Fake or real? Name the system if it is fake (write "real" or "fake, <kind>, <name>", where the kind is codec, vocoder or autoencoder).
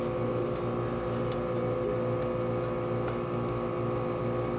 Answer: real